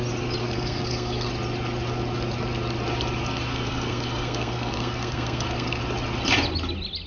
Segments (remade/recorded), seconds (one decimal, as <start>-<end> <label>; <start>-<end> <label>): 0.0-0.4 recorded; 0.4-1.3 remade; 1.3-3.5 recorded; 3.5-5.8 remade; 5.8-7.1 recorded